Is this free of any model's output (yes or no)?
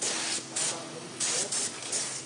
yes